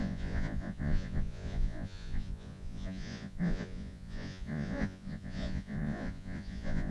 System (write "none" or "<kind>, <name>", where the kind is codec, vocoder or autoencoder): vocoder, Vocos